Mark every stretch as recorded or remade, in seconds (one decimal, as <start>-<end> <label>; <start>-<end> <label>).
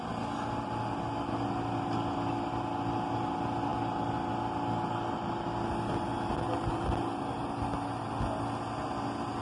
0.0-9.4 recorded